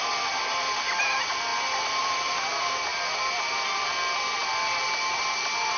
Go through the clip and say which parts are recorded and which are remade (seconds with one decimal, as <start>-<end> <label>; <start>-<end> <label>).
0.0-1.5 recorded; 1.5-2.4 remade; 2.4-2.9 recorded; 2.9-3.6 remade; 3.6-5.8 recorded